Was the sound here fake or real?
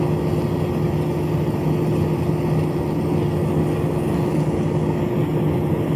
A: real